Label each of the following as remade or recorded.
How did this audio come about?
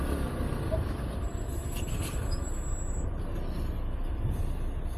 recorded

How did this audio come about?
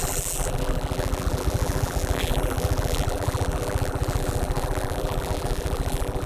remade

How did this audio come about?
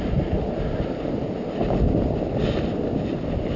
remade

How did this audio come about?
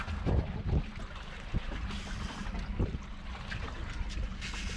recorded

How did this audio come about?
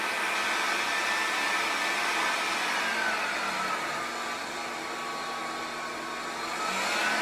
recorded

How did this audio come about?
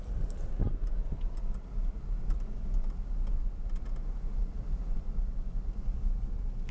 recorded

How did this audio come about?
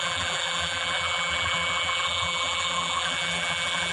remade